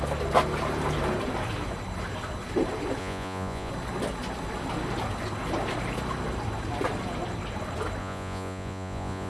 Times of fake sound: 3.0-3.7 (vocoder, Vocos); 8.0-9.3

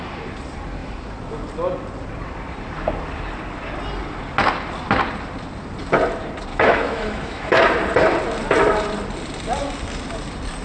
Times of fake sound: 6.5-7.6 (autoencoder, DAC-VAE)

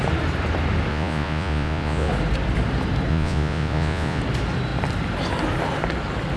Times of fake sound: 0.9-2.1 (vocoder, Vocos); 3.1-4.2

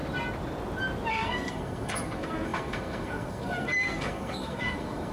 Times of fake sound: 1.1-5.1 (codec, SNAC)

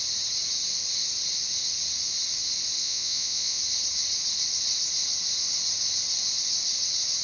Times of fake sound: 2.8-3.6 (vocoder, Vocos)

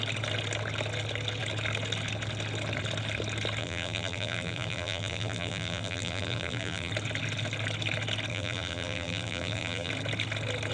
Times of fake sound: 3.6-6.9 (vocoder, BigVGAN v2); 8.3-9.9